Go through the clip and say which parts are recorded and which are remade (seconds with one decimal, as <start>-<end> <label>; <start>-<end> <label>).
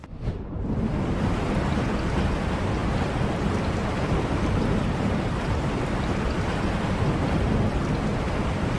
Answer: 0.0-8.8 recorded